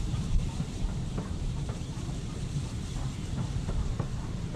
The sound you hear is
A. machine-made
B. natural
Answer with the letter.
A